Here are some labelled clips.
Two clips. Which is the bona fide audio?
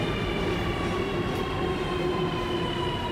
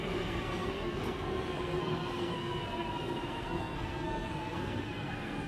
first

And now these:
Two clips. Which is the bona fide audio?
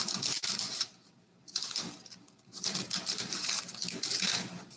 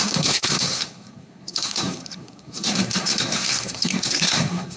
first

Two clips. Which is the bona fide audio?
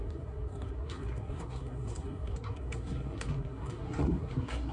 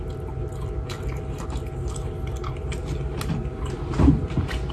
second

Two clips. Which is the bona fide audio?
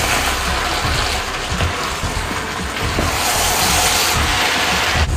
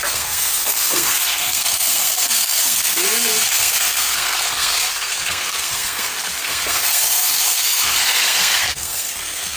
first